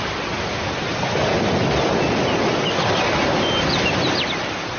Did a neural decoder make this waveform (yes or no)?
no